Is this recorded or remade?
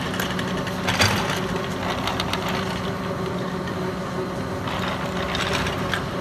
recorded